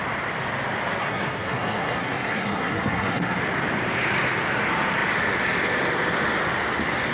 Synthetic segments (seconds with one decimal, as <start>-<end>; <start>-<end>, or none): 1.0-3.4